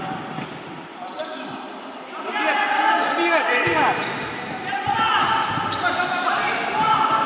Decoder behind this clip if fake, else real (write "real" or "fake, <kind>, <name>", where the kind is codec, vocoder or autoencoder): real